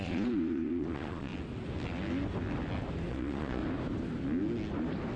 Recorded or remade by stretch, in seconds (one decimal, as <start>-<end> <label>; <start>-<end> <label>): 0.0-1.3 remade; 1.3-3.1 recorded; 3.1-3.6 remade; 3.6-5.2 recorded